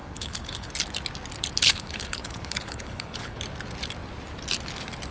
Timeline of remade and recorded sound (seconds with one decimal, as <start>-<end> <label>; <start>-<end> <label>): 0.0-0.7 remade; 0.7-1.6 recorded; 1.6-3.4 remade; 3.4-5.1 recorded